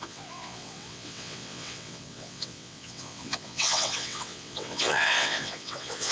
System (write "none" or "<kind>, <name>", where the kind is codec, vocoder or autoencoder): vocoder, WaveNeXt